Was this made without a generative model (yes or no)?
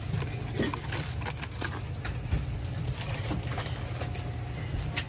yes